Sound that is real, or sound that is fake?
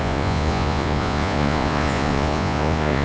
fake